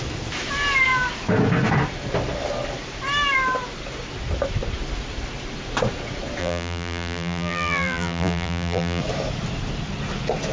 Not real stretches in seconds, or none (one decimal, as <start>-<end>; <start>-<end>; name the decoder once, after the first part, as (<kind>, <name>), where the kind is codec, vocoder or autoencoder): 6.4-9.0 (vocoder, BigVGAN v2)